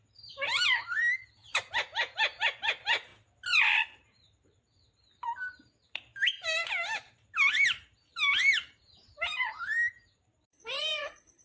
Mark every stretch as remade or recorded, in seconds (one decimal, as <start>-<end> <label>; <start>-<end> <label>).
0.0-1.0 remade; 1.0-1.6 recorded; 1.6-3.1 remade; 3.1-3.6 recorded; 3.6-11.4 remade